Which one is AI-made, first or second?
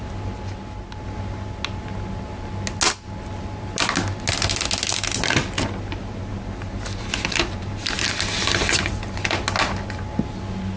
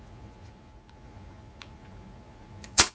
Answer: second